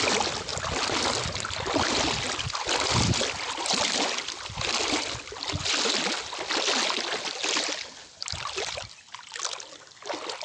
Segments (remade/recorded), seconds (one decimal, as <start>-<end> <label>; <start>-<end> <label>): 0.0-10.4 recorded